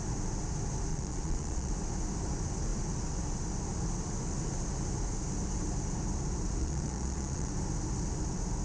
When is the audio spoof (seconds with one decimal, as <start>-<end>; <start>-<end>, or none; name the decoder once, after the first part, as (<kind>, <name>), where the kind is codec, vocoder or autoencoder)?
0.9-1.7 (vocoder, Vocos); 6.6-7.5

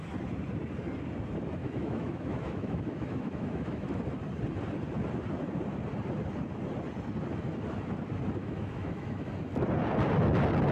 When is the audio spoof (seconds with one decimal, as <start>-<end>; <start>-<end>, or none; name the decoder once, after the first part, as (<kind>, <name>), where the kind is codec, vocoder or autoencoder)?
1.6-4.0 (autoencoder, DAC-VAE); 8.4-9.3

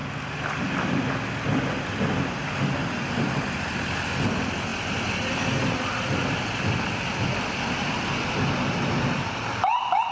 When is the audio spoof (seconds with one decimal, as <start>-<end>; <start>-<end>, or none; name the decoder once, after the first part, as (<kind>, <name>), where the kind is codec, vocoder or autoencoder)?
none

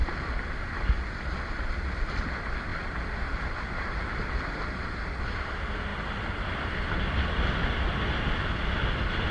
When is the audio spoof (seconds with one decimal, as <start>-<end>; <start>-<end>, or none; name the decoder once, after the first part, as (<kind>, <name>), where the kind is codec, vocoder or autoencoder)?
2.7-4.3 (vocoder, BigVGAN v2); 5.9-7.0